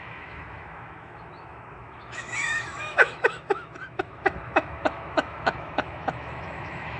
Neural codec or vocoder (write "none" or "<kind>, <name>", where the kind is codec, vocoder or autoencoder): autoencoder, DAC-VAE